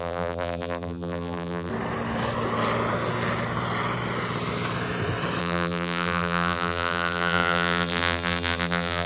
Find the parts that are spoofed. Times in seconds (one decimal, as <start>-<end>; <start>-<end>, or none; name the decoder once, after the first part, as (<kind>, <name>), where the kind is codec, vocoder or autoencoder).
0.0-1.7 (vocoder, BigVGAN v2); 5.4-9.1